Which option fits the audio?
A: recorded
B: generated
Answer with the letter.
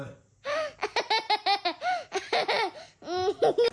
A